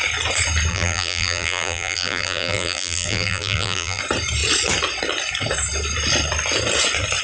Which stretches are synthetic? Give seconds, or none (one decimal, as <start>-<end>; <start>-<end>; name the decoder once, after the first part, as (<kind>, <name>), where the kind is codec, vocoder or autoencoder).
0.7-4.0 (vocoder, BigVGAN v2)